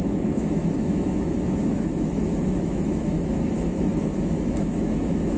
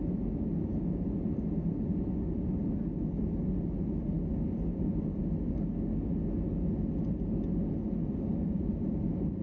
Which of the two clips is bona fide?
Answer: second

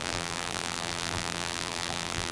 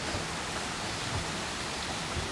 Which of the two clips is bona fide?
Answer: second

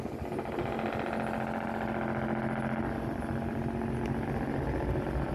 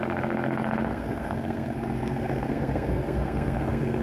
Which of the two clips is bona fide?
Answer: first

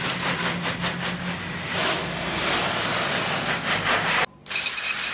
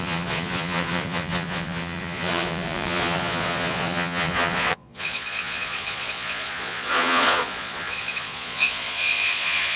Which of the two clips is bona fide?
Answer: first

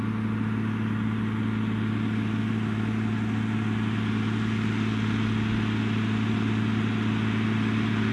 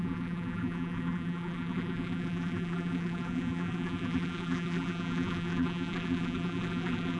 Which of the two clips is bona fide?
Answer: first